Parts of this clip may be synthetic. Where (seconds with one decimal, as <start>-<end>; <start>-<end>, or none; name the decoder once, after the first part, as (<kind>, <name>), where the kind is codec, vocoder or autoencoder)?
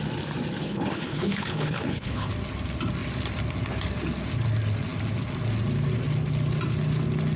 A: 0.6-2.3 (codec, HILCodec)